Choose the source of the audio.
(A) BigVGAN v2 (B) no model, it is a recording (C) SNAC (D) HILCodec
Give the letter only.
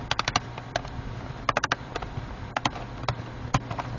B